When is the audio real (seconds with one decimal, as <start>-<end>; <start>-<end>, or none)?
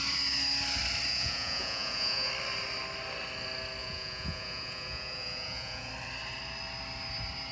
0.0-1.1; 2.3-3.8; 5.9-7.5